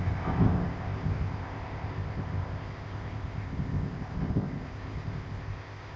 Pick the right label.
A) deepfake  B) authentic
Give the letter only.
A